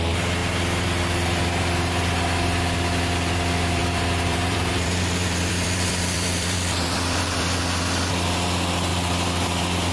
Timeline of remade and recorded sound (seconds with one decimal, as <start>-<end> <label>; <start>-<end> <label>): 0.0-3.8 recorded; 3.8-7.6 remade; 7.6-8.9 recorded; 8.9-9.9 remade